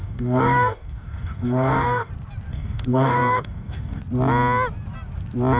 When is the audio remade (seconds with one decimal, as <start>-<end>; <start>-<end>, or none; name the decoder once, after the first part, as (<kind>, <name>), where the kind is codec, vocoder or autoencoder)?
0.0-2.1 (codec, DAC); 2.5-4.0